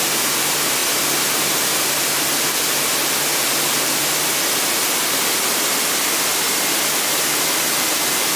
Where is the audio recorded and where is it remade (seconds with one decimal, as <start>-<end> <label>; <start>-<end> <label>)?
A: 0.0-8.4 recorded